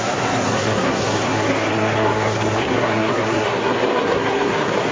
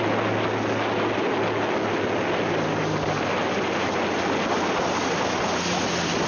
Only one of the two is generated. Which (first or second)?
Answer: first